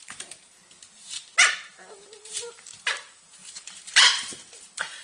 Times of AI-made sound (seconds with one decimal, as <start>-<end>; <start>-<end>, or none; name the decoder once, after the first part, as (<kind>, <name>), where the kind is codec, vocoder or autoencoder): 0.0-0.6 (vocoder, BigVGAN v2); 1.7-5.0